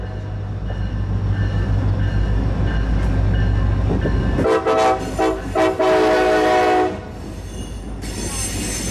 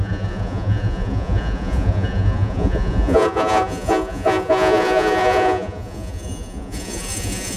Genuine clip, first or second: first